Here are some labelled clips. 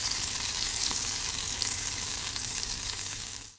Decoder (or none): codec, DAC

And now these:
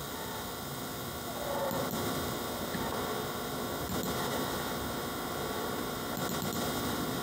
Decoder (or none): none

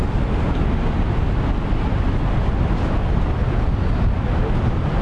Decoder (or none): none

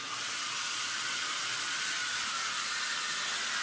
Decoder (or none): none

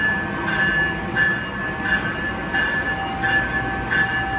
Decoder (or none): none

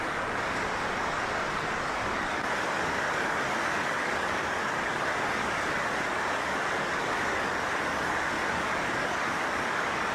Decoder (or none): codec, DAC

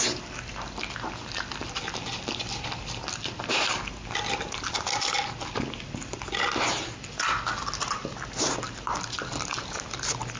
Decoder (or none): none